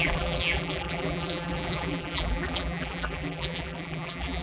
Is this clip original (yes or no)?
no